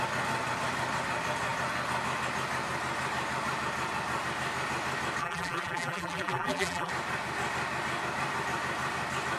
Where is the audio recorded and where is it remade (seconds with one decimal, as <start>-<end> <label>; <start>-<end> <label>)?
0.0-5.2 recorded; 5.2-6.9 remade; 6.9-9.4 recorded